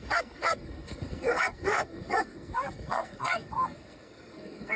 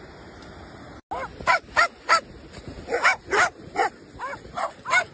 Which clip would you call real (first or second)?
second